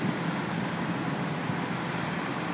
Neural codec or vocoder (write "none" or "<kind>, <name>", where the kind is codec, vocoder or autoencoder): none